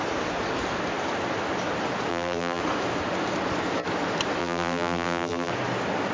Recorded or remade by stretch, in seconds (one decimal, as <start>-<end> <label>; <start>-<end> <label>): 0.0-2.1 recorded; 2.1-2.6 remade; 2.6-4.4 recorded; 4.4-5.5 remade; 5.5-6.1 recorded